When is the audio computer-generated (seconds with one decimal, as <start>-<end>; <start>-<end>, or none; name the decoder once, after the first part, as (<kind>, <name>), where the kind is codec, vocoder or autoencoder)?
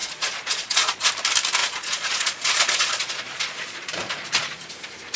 0.0-1.1 (vocoder, Vocos); 1.6-4.7